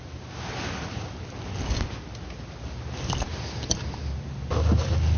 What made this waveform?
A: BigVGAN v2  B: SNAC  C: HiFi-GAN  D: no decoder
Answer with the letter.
D